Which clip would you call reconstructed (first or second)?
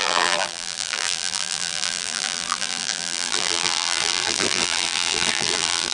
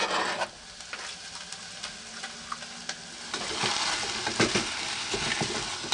first